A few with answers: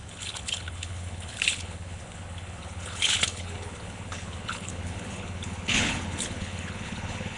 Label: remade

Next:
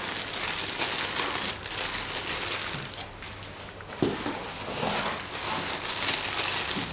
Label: recorded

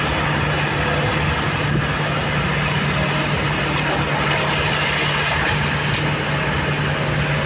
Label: recorded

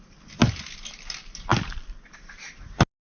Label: recorded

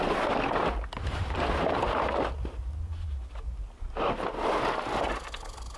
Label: recorded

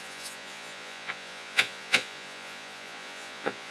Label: remade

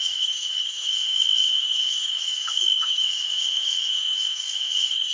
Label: remade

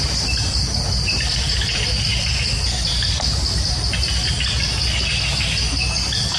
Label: recorded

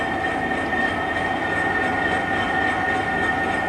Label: recorded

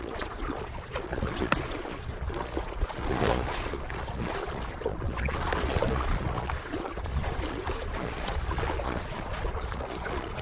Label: remade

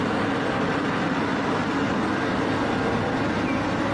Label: recorded